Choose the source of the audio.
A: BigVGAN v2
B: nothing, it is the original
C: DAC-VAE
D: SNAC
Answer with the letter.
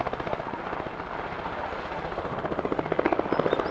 B